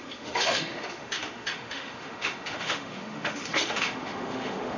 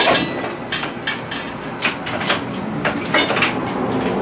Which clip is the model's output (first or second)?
first